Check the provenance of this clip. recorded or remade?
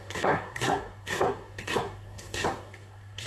remade